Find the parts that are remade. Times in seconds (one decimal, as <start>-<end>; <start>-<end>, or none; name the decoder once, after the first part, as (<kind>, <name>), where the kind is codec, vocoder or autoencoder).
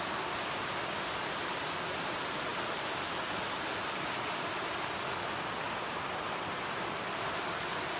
0.0-2.5 (vocoder, BigVGAN v2); 5.6-8.0